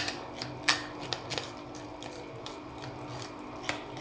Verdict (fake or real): real